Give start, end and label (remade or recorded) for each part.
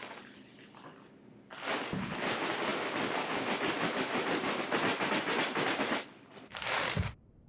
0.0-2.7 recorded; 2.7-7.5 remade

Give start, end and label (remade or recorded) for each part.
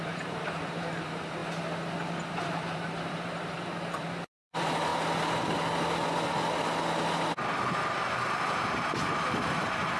0.0-1.4 remade; 1.4-2.3 recorded; 2.3-4.9 remade; 4.9-7.6 recorded; 7.6-10.0 remade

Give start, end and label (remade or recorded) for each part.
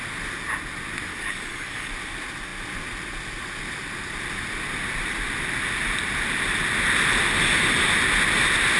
0.0-1.1 recorded; 1.1-1.9 remade; 1.9-8.8 recorded